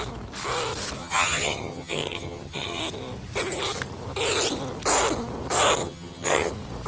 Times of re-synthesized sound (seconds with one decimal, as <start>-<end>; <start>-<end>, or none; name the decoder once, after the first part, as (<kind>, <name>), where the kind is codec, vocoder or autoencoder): 1.0-2.8 (vocoder, HiFi-GAN); 5.8-6.5